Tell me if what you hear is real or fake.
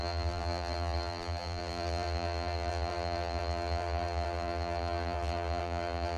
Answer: fake